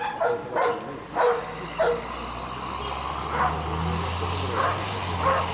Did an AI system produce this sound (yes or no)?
no